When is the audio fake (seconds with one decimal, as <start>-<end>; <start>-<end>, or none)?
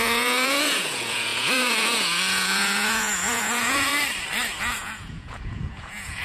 0.0-3.9; 4.6-6.2